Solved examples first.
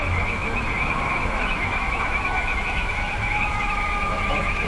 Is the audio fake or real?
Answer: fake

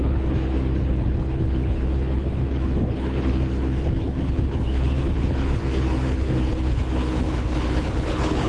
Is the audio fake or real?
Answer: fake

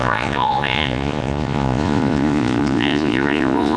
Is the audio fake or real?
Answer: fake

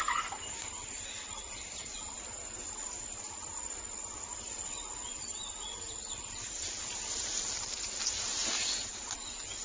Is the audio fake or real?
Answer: real